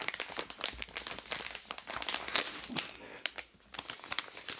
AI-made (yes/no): no